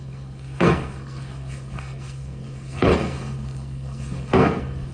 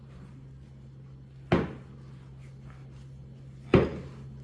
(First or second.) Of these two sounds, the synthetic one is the first